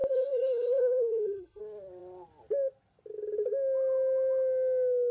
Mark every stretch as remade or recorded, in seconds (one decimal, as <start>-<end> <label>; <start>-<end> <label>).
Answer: 0.0-1.6 remade; 1.6-5.1 recorded